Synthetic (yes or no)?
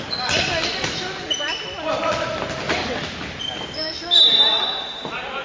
no